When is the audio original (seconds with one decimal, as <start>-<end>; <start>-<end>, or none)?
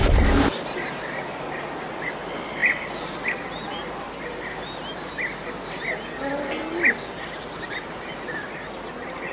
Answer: 0.0-9.3